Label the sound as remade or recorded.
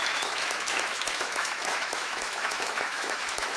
remade